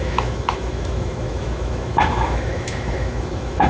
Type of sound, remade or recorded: remade